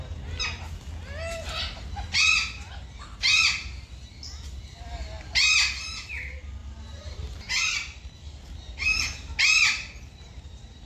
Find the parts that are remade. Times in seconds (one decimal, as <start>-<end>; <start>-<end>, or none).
6.6-8.1